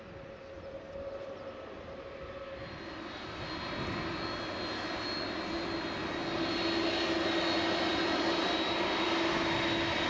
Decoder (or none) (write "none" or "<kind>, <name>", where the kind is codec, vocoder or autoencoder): none